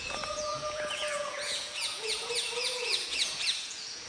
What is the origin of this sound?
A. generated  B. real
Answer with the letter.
A